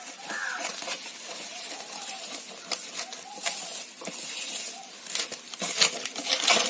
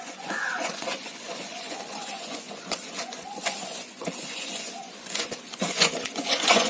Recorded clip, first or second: first